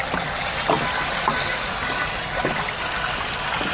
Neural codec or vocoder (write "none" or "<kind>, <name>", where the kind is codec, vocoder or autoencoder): none